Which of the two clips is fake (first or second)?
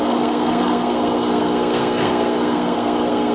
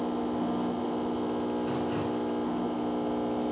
first